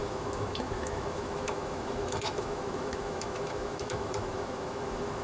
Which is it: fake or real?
fake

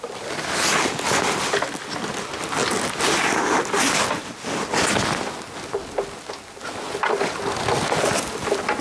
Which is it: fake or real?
real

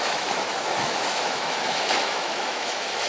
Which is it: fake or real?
fake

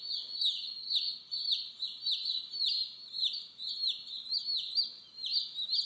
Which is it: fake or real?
real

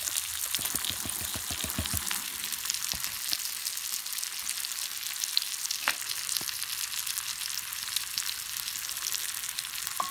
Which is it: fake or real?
real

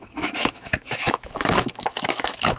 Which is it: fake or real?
fake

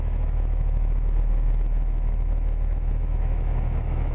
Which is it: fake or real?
fake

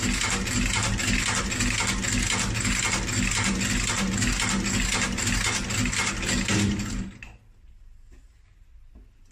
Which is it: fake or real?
real